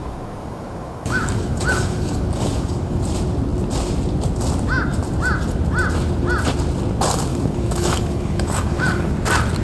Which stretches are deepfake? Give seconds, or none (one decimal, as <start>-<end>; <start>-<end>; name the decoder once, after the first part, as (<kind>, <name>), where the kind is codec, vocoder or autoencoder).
0.0-3.0 (codec, DAC); 7.3-9.1